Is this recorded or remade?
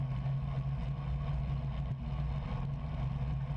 recorded